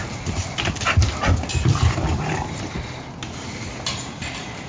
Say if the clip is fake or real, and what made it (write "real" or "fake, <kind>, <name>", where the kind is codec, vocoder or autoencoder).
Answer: real